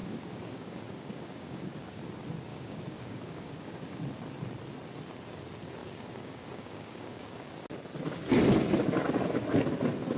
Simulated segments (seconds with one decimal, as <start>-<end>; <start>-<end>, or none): 0.0-2.0; 2.5-4.0; 5.8-7.5